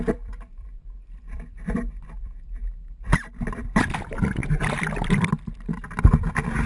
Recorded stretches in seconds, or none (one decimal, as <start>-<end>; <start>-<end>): none